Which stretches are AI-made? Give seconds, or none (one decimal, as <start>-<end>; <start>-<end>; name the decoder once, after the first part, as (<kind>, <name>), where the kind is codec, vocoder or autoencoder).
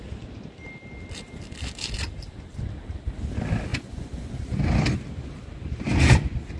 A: 3.7-4.3 (vocoder, Vocos)